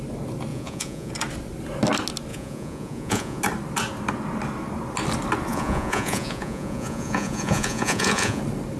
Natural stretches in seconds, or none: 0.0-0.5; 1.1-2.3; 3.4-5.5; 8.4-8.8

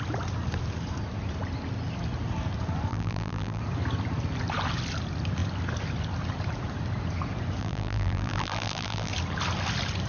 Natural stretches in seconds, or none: 0.0-2.9; 3.6-7.6; 9.1-10.1

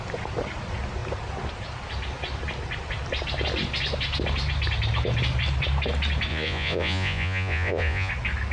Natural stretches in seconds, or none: 0.0-6.3; 8.1-8.5

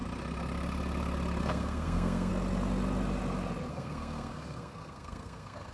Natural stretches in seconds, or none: 0.0-1.4; 2.3-3.7

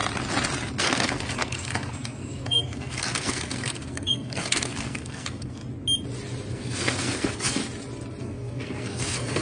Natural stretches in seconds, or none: 0.0-0.8; 5.6-6.5; 7.6-8.2

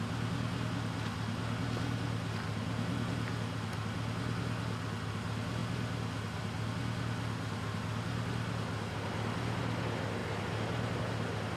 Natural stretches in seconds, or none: 0.0-11.6

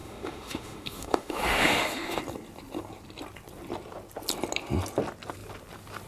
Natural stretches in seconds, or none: 2.2-6.1